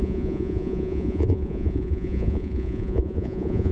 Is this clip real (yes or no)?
no